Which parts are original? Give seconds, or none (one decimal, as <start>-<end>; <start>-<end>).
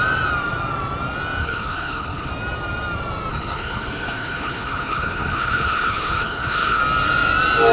0.0-1.4; 2.3-3.3; 6.8-7.7